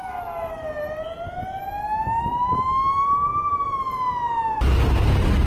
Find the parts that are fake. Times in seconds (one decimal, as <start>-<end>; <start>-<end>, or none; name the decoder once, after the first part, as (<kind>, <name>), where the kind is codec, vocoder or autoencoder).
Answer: none